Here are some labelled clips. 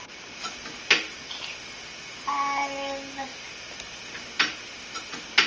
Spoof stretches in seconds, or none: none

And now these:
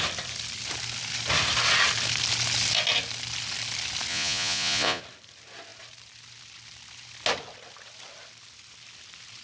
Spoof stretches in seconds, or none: 4.1-5.0 (vocoder, Vocos)

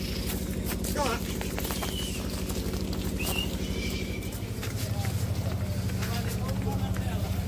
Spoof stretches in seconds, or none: none

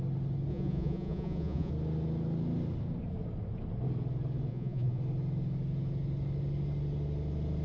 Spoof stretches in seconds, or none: 0.5-1.7 (vocoder, Vocos); 4.5-5.0